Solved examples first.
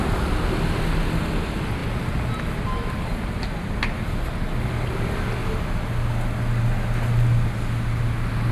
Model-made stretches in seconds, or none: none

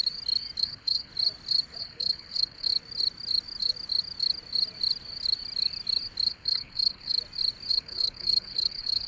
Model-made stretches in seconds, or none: 0.6-1.1; 1.8-2.7; 6.3-7.1; 7.7-9.1

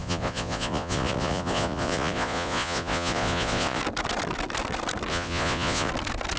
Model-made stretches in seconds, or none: 0.0-3.8; 5.1-5.9

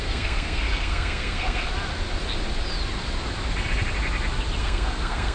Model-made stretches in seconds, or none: 0.0-1.7; 4.6-5.3

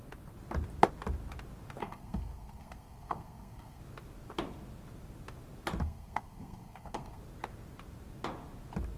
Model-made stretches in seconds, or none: 1.8-3.8; 5.8-7.2